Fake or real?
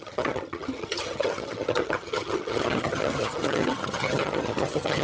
fake